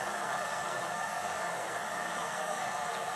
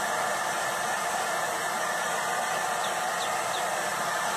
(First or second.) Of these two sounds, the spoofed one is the first